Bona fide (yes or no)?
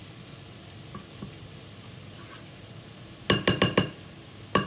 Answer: yes